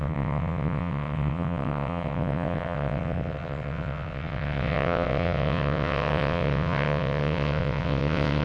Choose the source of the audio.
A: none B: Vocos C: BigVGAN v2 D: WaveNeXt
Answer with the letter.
D